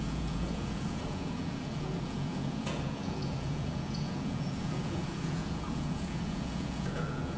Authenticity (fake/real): fake